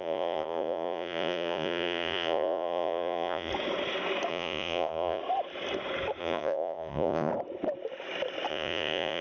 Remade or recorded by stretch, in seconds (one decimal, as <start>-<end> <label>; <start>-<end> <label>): 0.0-3.5 remade; 3.5-4.3 recorded; 4.3-5.2 remade; 5.2-6.2 recorded; 6.2-7.3 remade; 7.3-8.5 recorded; 8.5-9.2 remade